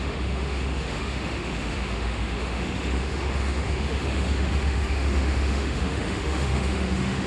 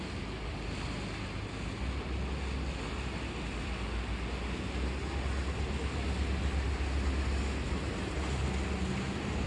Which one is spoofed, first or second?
first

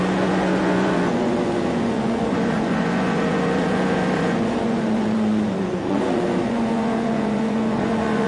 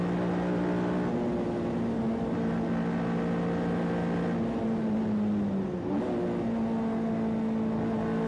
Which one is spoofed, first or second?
first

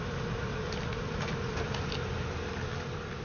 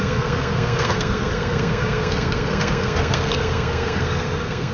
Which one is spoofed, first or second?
second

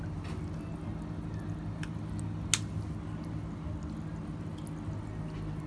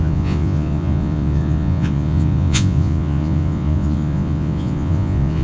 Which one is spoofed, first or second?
second